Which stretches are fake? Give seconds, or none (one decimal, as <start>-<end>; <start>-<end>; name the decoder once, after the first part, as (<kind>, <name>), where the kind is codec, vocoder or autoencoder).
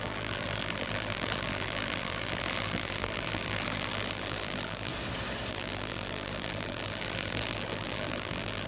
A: 0.0-4.9 (vocoder, BigVGAN v2); 5.5-8.7